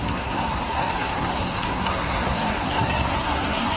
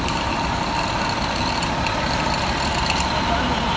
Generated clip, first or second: first